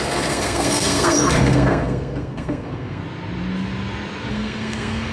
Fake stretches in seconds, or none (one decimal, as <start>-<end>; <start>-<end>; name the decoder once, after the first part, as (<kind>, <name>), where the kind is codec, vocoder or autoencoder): 0.0-3.0 (codec, SNAC); 4.3-5.1